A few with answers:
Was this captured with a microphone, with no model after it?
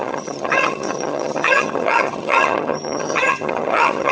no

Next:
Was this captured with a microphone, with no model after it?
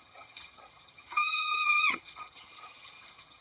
no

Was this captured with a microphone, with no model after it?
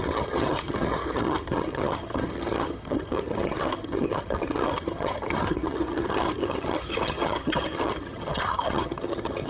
no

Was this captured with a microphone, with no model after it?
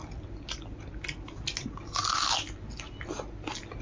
yes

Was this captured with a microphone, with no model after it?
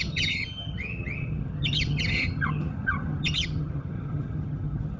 no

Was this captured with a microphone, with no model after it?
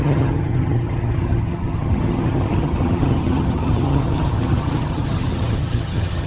no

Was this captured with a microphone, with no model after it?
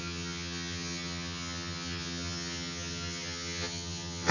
no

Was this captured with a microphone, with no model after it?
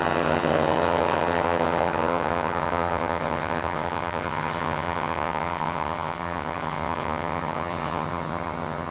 no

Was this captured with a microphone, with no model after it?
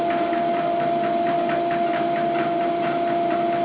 yes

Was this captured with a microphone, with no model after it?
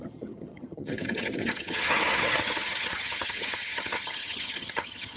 no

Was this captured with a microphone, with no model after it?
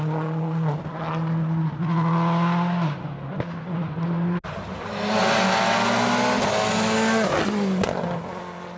yes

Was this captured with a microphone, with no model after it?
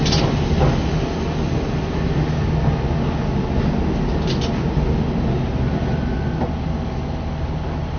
yes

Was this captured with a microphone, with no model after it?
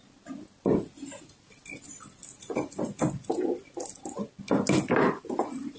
yes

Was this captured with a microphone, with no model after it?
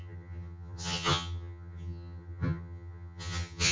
no